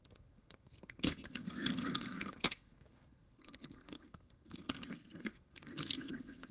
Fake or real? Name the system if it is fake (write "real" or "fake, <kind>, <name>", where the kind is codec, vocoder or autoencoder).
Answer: fake, codec, SNAC